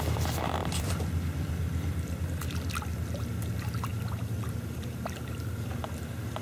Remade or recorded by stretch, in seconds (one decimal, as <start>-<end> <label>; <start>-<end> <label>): 0.0-0.6 recorded; 0.6-2.7 remade; 2.7-3.9 recorded; 3.9-5.5 remade; 5.5-6.4 recorded